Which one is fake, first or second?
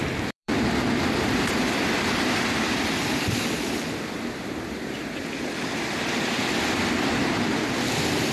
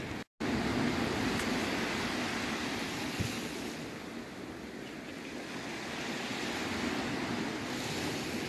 first